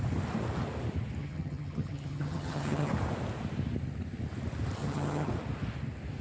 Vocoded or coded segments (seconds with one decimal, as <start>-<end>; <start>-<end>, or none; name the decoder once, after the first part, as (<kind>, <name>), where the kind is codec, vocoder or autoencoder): 1.2-2.9 (vocoder, HiFi-GAN); 4.8-5.3